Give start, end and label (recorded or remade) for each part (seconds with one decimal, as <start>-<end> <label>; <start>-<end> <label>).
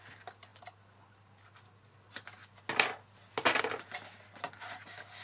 0.0-5.2 recorded